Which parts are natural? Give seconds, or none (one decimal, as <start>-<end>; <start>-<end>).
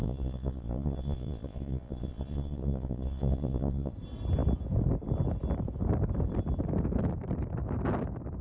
3.9-8.4